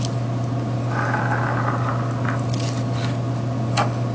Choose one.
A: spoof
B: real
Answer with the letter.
B